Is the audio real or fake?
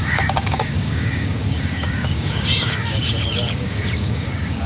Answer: fake